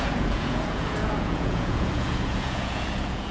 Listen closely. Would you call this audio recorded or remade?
remade